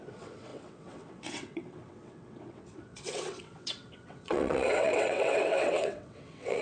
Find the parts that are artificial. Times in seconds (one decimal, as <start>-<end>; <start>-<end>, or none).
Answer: 0.0-6.6